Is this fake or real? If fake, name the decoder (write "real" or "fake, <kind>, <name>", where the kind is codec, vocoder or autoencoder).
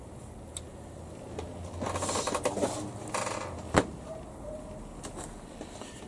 real